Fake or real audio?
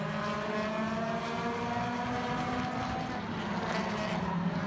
real